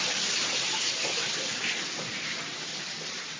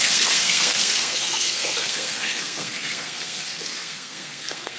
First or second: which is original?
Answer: first